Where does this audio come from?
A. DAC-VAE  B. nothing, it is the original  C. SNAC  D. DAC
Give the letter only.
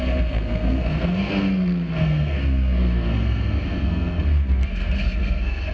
C